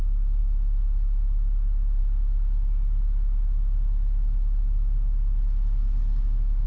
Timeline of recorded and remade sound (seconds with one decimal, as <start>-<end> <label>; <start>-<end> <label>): 0.0-6.7 recorded